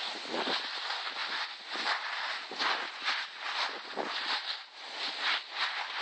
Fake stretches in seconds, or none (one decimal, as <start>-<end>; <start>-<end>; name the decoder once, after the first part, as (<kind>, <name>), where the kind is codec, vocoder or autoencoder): none